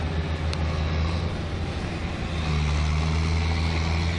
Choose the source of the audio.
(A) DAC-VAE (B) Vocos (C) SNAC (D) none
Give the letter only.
D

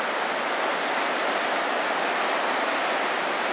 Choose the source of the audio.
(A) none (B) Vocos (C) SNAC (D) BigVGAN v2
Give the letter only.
A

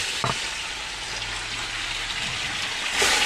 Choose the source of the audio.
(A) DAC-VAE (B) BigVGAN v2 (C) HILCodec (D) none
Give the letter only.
D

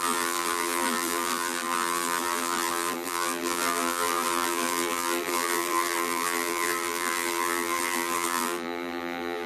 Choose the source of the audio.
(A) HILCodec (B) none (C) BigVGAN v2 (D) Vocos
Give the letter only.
C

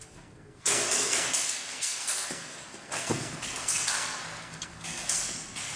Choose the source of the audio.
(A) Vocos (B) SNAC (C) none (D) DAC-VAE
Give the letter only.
B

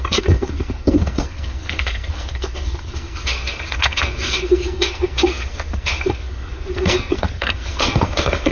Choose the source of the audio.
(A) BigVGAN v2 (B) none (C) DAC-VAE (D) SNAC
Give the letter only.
D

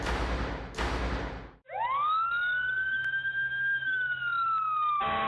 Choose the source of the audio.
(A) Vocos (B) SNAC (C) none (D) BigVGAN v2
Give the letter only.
C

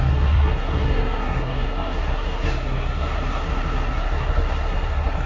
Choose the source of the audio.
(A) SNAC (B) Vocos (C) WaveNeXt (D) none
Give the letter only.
A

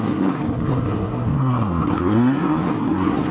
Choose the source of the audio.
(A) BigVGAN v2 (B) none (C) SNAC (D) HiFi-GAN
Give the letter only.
C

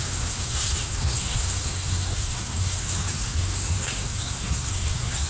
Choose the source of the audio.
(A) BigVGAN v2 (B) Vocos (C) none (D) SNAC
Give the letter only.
D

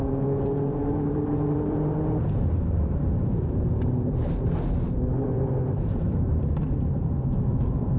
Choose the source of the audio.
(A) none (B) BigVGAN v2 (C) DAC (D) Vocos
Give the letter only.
B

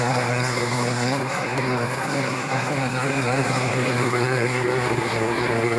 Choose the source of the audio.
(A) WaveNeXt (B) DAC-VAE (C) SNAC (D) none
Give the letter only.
C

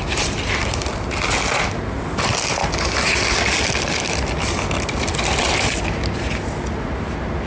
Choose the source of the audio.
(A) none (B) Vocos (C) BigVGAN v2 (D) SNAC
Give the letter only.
A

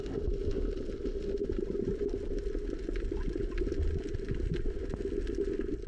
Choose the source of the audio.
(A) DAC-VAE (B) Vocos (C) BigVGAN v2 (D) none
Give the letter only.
D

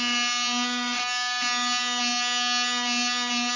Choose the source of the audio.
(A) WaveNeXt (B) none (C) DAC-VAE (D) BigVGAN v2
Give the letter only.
B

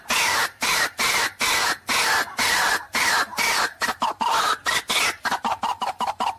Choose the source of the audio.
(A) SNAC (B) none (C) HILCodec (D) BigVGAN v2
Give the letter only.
B